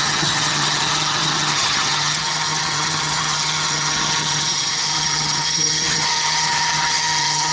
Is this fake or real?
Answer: fake